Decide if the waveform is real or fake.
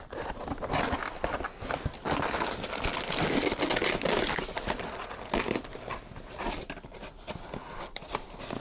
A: real